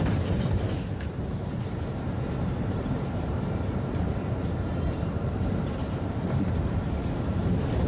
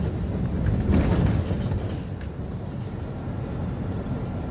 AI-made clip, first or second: first